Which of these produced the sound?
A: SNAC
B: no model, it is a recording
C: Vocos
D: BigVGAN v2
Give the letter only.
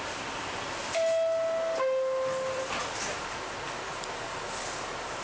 B